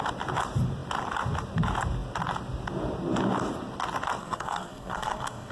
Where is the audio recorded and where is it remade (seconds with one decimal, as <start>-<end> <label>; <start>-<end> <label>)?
0.0-4.2 recorded; 4.2-5.5 remade